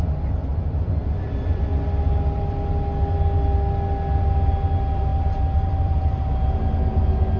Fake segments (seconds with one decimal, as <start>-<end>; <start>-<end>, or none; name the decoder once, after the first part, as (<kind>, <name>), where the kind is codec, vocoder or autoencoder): 0.5-1.6 (vocoder, BigVGAN v2); 5.1-6.0